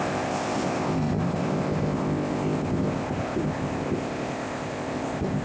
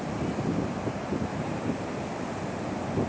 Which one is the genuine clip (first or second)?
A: second